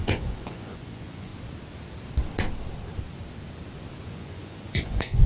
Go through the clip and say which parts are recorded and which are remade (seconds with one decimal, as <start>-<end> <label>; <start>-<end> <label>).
0.0-1.3 remade; 1.3-4.1 recorded; 4.1-5.3 remade